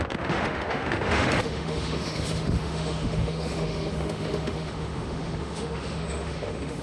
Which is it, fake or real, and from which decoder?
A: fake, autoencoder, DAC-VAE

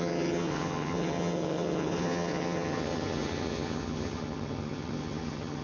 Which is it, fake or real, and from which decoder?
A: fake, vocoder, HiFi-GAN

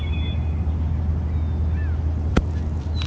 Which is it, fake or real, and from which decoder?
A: real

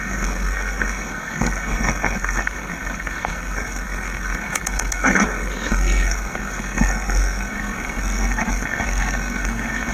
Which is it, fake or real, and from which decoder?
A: fake, codec, SNAC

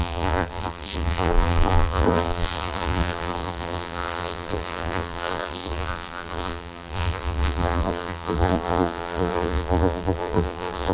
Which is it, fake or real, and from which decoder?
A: fake, vocoder, BigVGAN v2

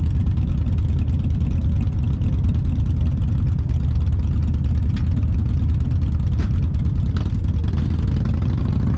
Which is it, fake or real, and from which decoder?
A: real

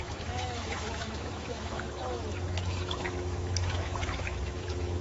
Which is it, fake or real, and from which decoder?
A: fake, autoencoder, DAC-VAE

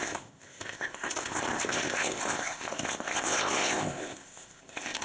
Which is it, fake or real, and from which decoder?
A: fake, codec, ZipCodec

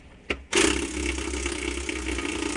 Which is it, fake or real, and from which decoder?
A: real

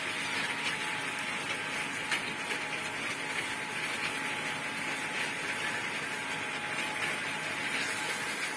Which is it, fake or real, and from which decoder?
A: real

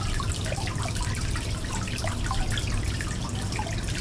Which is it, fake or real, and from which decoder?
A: real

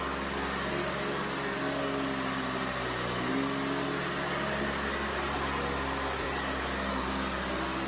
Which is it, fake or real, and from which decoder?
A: real